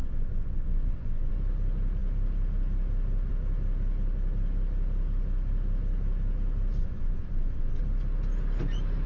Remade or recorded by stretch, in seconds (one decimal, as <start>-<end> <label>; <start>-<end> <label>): 0.0-1.3 remade; 1.3-6.8 recorded; 6.8-7.8 remade; 7.8-9.1 recorded